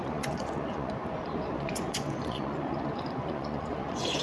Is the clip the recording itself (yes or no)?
no